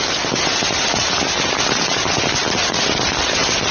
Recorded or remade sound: recorded